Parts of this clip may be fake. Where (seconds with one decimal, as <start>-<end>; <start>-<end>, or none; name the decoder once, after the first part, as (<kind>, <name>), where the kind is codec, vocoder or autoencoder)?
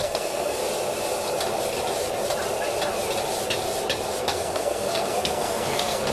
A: 0.0-0.6 (codec, SNAC); 4.2-6.1